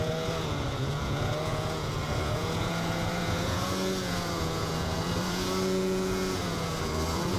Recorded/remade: remade